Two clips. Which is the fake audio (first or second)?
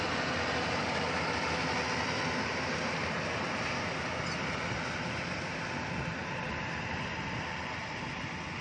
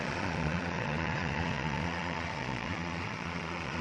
second